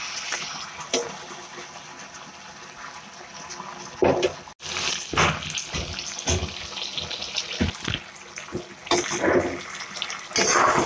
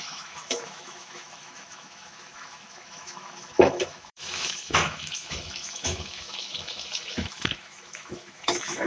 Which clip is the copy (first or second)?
second